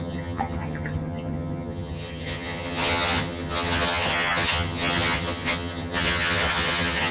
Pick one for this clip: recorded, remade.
remade